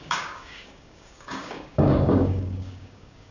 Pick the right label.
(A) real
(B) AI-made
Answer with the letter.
B